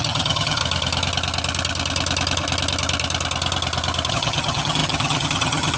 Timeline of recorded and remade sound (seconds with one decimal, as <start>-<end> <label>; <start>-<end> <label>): 0.0-0.6 remade; 0.6-4.1 recorded; 4.1-5.8 remade